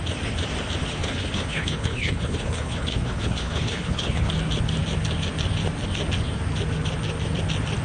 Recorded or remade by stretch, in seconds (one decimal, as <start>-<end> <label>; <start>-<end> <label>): 0.0-0.8 recorded; 0.8-4.3 remade; 4.3-7.8 recorded